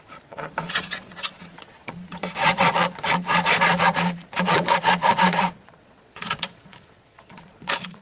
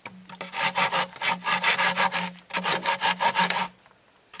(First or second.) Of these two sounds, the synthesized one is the first